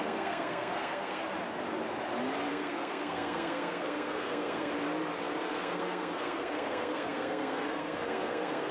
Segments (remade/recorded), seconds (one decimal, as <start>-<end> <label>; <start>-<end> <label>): 0.0-1.2 remade; 1.2-2.5 recorded; 2.5-4.7 remade; 4.7-5.4 recorded; 5.4-8.7 remade